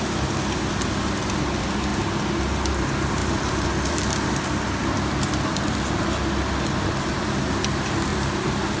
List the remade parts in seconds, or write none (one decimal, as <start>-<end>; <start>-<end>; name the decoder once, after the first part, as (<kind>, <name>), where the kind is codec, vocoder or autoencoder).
3.2-5.1 (vocoder, BigVGAN v2)